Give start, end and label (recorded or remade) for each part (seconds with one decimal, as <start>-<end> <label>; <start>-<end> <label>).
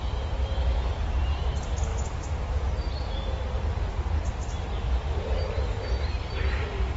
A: 0.0-7.0 recorded